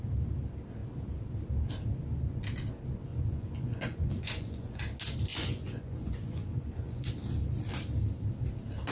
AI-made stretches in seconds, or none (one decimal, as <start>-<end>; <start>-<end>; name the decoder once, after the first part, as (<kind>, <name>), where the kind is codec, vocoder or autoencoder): 3.1-4.8 (vocoder, Vocos); 5.3-7.0